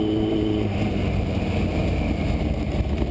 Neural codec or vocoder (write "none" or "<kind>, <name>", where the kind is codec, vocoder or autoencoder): vocoder, BigVGAN v2